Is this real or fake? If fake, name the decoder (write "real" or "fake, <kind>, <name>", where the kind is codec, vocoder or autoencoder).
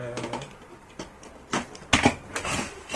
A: real